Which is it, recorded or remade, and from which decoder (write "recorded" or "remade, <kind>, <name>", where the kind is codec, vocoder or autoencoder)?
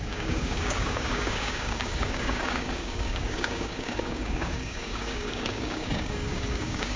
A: remade, codec, DAC